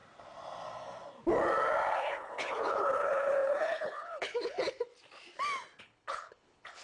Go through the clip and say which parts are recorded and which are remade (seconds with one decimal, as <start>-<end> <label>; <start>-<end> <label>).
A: 0.0-2.0 recorded; 2.0-4.9 remade; 4.9-5.8 recorded; 5.8-6.8 remade